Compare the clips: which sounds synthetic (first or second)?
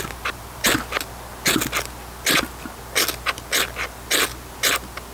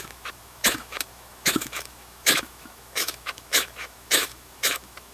second